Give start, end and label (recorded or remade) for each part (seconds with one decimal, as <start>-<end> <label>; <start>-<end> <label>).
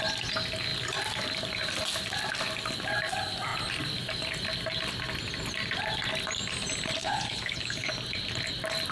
0.0-7.0 recorded; 7.0-7.9 remade; 7.9-8.9 recorded